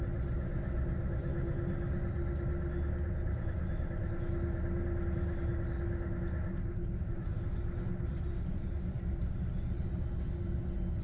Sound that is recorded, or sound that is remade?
recorded